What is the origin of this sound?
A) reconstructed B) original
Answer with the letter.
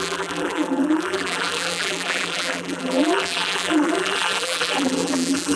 A